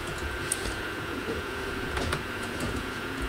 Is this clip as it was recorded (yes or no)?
no